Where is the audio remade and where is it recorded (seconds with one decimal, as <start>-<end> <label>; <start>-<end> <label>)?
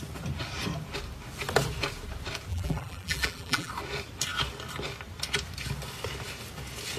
0.0-2.5 recorded; 2.5-3.7 remade; 3.7-7.0 recorded